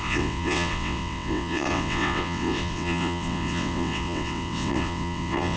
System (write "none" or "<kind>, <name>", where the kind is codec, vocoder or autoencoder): vocoder, WaveNeXt